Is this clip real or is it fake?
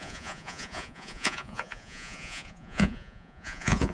fake